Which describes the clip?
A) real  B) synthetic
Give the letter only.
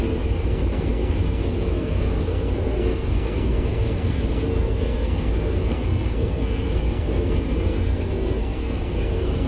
B